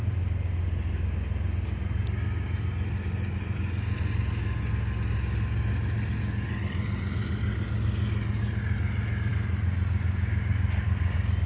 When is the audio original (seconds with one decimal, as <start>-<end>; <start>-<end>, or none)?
0.0-11.5